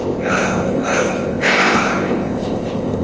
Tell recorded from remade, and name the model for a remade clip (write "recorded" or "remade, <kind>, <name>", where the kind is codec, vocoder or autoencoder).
remade, codec, ZipCodec